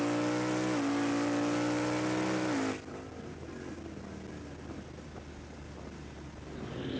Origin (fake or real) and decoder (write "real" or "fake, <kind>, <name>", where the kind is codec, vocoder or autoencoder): real